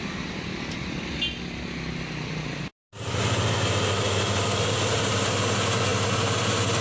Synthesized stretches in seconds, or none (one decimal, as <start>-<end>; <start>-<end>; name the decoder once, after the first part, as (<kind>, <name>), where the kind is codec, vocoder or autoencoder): none